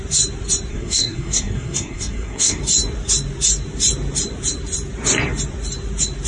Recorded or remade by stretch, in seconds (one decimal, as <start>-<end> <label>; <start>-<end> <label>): 0.0-0.7 recorded; 0.7-2.6 remade; 2.6-6.3 recorded